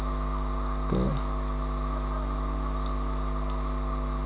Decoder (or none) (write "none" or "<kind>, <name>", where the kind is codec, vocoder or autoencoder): none